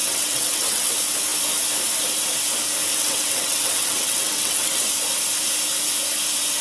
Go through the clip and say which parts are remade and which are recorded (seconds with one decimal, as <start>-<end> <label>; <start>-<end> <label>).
0.0-0.9 remade; 0.9-2.9 recorded; 2.9-4.9 remade; 4.9-6.6 recorded